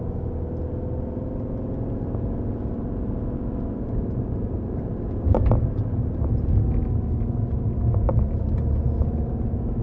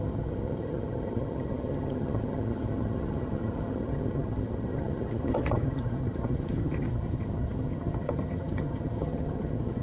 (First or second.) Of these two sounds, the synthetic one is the second